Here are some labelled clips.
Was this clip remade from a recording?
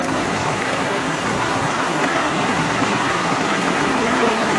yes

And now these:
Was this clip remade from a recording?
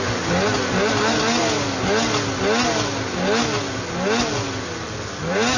no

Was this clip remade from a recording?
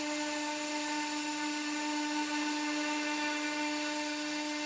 no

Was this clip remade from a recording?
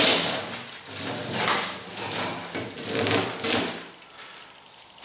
no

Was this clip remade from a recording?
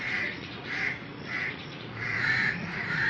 yes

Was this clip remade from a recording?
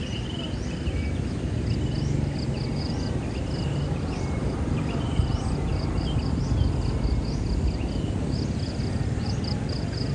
no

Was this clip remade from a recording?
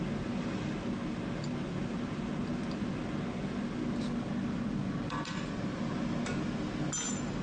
no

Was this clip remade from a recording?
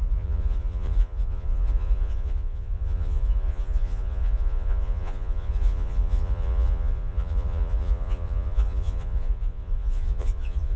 yes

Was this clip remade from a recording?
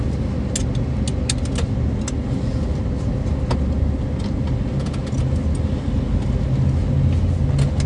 no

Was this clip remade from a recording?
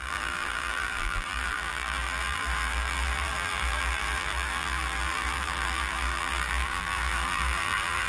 yes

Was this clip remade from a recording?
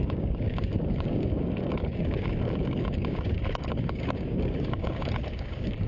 yes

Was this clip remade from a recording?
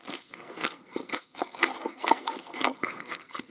yes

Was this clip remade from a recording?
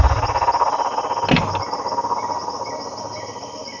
no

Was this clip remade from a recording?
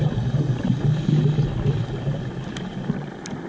no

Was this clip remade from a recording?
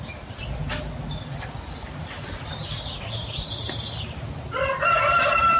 no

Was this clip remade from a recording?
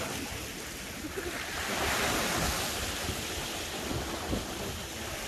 no